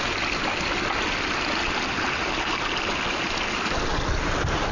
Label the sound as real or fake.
real